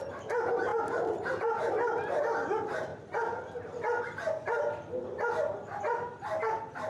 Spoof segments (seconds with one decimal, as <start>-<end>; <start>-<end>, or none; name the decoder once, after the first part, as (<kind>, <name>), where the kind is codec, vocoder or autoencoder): none